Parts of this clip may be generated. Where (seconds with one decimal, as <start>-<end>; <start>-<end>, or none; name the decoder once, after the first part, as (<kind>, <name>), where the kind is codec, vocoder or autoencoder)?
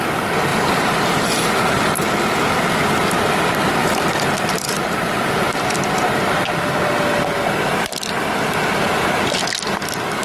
0.5-2.1 (vocoder, BigVGAN v2); 3.7-6.9